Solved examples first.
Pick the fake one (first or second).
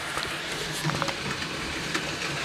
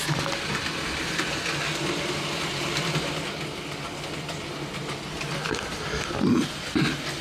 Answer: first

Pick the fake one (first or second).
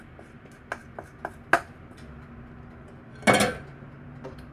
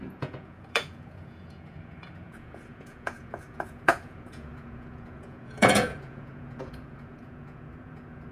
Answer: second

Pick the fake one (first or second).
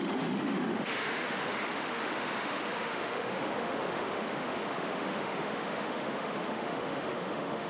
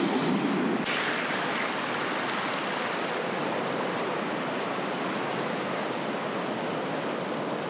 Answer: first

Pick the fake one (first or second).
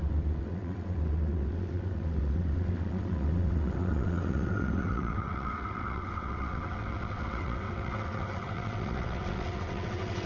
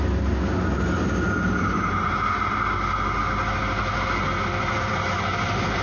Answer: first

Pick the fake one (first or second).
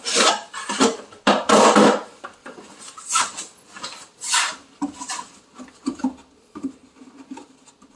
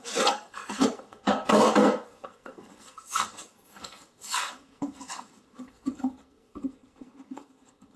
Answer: second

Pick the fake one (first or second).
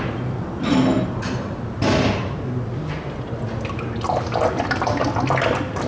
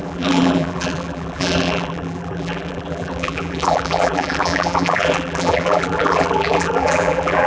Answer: second